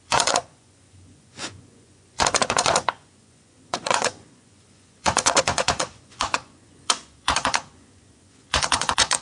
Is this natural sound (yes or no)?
no